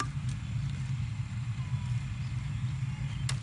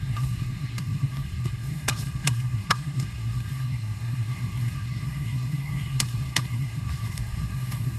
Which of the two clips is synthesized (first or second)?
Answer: second